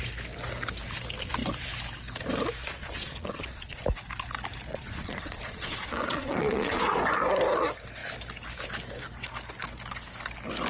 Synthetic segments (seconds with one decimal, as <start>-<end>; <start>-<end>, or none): 2.6-3.8; 4.7-6.8